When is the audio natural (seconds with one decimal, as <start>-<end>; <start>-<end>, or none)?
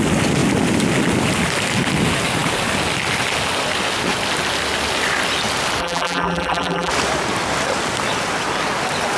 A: 0.0-5.8; 6.9-9.2